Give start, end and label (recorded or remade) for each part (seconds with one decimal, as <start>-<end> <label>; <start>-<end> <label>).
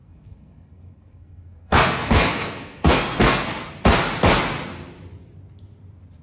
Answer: 0.0-3.7 remade; 3.7-6.2 recorded